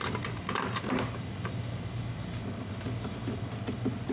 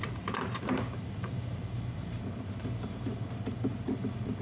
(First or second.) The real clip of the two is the first